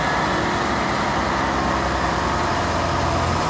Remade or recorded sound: recorded